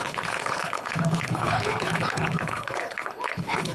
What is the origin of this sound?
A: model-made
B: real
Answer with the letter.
A